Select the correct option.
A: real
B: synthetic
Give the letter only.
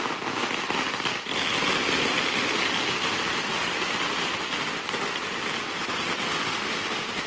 A